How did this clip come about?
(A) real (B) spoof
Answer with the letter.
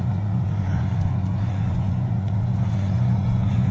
B